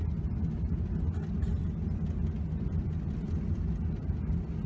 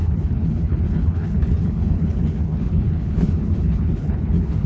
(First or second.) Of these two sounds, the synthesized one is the second